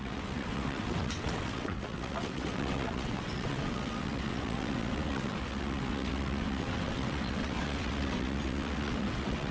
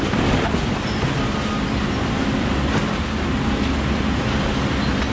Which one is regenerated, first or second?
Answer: first